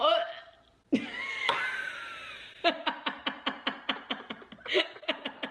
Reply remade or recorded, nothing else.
recorded